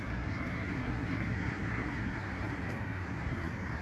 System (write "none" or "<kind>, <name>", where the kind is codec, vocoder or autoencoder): codec, SNAC